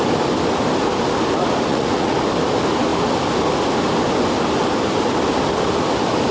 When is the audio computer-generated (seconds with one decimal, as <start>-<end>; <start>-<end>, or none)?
1.7-2.2

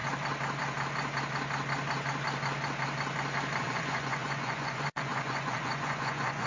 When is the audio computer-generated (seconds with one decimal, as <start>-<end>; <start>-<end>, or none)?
3.6-6.5

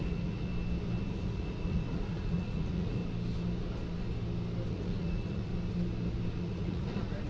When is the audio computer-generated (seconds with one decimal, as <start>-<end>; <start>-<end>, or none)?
0.0-0.5; 1.1-3.0; 4.7-5.5; 6.3-7.3

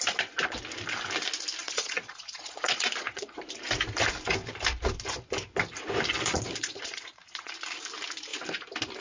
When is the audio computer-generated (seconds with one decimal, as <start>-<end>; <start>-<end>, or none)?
1.6-3.4; 6.3-7.5

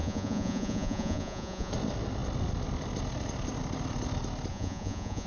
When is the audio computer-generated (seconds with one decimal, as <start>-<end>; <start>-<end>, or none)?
0.0-1.7; 4.5-5.3